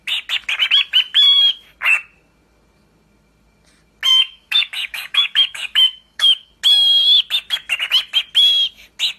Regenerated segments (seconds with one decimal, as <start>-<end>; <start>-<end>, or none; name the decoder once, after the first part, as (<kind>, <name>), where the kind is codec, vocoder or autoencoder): 4.1-6.5 (codec, DAC)